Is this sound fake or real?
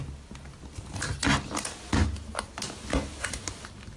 real